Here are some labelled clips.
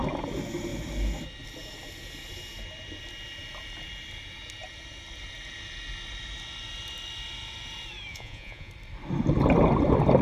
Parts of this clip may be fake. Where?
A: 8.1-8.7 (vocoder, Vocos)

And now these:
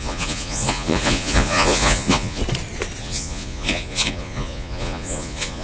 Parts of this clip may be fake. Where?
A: 0.0-2.4 (vocoder, Vocos); 3.0-5.6

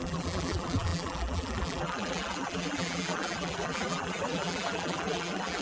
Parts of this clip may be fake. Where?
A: 0.0-5.6 (vocoder, BigVGAN v2)

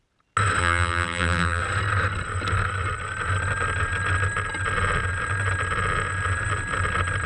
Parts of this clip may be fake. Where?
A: 0.6-1.6 (vocoder, BigVGAN v2)